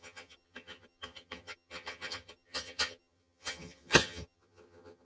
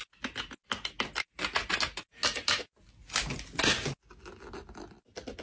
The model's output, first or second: first